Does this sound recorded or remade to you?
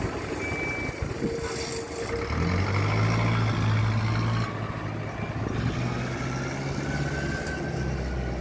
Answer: recorded